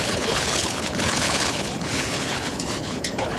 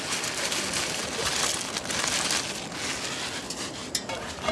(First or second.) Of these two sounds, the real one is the second